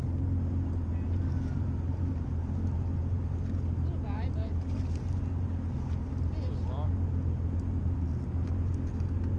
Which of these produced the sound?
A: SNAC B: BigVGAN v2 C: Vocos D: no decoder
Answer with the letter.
D